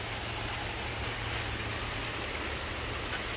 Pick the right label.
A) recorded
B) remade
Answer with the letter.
A